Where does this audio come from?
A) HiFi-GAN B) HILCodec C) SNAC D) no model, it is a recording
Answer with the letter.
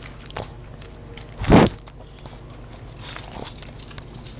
D